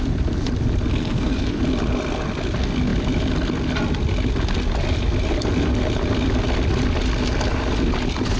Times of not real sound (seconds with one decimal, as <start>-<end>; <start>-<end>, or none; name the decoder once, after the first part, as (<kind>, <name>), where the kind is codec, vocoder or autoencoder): 0.9-1.6 (codec, SNAC)